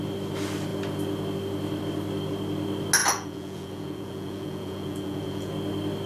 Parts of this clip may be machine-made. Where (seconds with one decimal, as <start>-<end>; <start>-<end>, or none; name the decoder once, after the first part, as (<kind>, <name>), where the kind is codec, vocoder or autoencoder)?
3.0-5.5 (vocoder, Vocos)